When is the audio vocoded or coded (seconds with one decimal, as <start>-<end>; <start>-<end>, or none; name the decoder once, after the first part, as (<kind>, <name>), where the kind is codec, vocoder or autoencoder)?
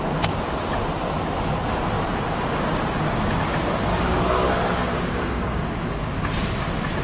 3.9-6.1 (codec, DAC)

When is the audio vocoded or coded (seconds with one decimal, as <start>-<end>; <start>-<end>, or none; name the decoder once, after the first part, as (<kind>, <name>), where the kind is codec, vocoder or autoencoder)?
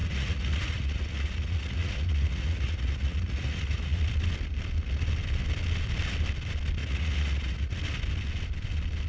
0.0-4.0 (vocoder, Vocos); 6.8-7.8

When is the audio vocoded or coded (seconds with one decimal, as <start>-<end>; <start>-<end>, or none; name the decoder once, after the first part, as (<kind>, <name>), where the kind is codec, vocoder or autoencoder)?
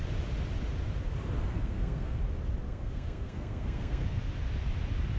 1.5-2.2 (codec, SNAC); 2.6-4.2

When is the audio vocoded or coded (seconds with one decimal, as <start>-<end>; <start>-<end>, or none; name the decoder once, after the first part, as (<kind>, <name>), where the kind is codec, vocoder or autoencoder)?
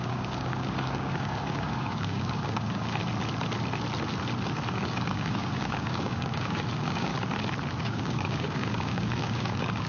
0.0-3.0 (codec, DAC); 4.7-7.1; 7.8-9.9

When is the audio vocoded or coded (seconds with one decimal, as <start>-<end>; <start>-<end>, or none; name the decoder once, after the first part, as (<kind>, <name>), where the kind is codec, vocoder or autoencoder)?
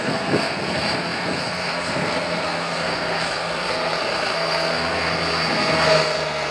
0.0-6.5 (codec, SNAC)